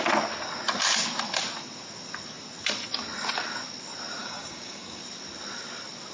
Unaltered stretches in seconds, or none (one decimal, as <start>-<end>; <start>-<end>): 0.0-4.2; 5.0-6.1